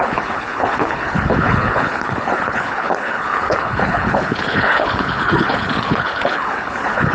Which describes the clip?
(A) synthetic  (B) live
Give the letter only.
A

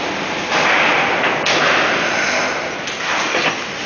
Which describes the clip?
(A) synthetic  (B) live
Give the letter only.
B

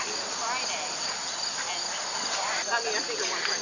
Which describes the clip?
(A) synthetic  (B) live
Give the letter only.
B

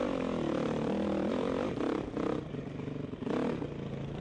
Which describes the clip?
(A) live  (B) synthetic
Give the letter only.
A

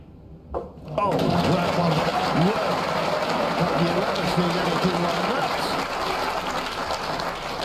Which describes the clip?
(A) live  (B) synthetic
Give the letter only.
A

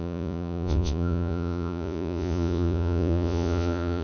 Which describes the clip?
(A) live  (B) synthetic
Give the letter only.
B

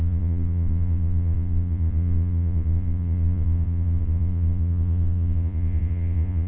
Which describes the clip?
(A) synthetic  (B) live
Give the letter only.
A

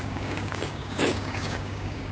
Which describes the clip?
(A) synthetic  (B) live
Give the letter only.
A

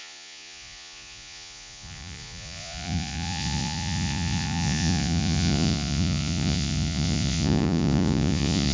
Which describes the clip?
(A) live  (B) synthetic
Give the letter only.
B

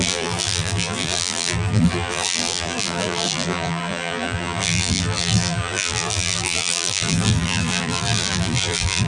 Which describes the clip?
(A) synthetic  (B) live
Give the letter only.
A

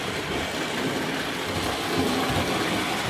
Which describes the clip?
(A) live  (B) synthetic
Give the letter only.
A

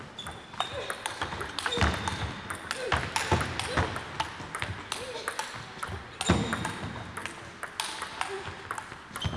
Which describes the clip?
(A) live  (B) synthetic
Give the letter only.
A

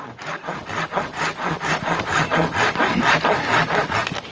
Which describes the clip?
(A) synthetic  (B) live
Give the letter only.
B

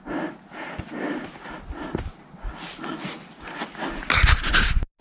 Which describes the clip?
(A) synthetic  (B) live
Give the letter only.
B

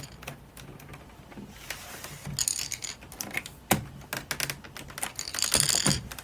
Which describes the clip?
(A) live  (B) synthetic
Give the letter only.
A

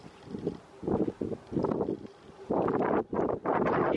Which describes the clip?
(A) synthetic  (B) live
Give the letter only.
B